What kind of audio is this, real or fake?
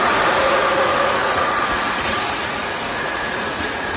fake